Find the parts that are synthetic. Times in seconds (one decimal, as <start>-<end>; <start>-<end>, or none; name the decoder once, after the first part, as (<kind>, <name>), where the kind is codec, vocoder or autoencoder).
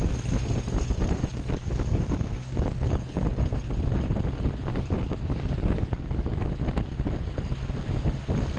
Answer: 1.3-3.2 (codec, DAC); 4.7-6.5